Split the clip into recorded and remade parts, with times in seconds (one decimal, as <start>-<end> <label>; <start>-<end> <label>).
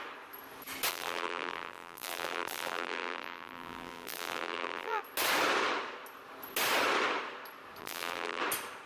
0.0-0.9 recorded; 0.9-5.0 remade; 5.0-7.8 recorded; 7.8-8.4 remade; 8.4-8.9 recorded